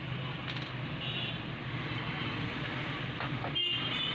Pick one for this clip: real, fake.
real